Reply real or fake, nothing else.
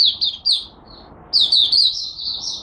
real